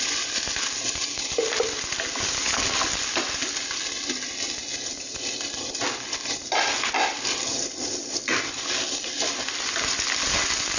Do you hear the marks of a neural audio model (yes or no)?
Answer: no